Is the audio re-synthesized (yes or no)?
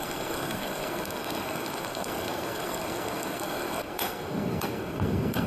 yes